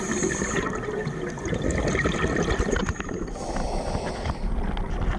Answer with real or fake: real